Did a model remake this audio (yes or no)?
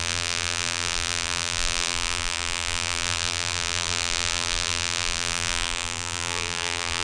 yes